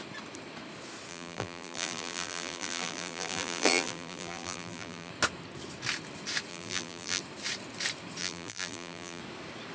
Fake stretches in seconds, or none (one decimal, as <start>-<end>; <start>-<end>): 1.1-5.1; 6.5-7.2; 8.2-9.2